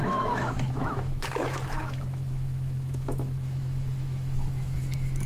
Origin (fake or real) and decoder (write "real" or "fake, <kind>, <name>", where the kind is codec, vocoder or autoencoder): fake, autoencoder, DAC-VAE